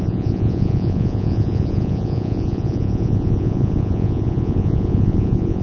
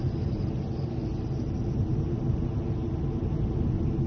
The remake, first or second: first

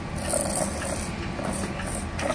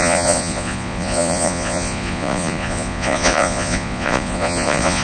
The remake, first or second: second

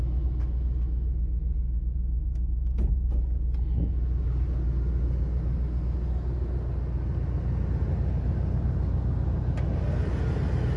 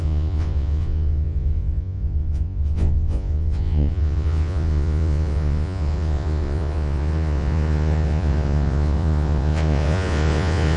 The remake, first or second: second